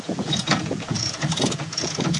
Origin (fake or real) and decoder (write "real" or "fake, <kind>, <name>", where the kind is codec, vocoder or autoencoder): fake, vocoder, Vocos